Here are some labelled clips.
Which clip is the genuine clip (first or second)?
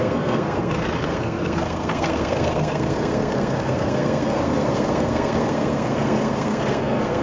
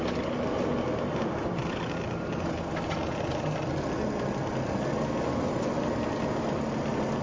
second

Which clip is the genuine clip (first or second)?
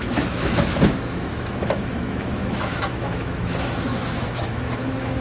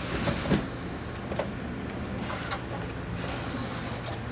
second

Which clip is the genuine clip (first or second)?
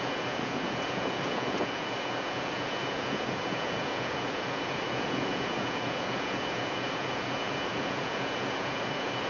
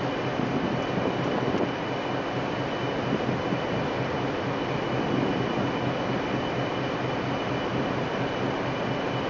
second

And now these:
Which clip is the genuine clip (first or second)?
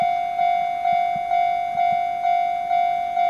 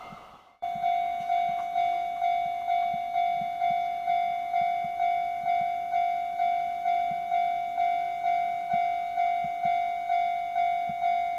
first